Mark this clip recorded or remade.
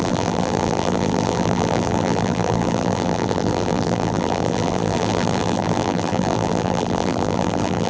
remade